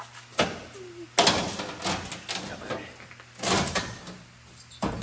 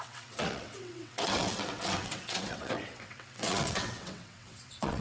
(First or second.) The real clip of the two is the first